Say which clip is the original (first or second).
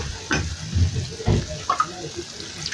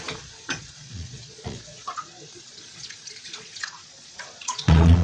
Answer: first